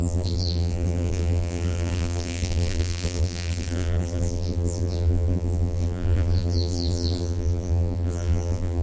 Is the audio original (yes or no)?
no